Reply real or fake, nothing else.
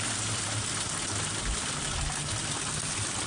real